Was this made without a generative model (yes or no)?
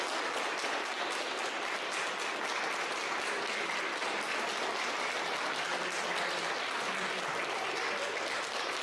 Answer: yes